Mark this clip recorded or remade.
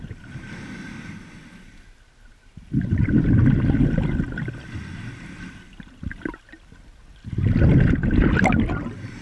recorded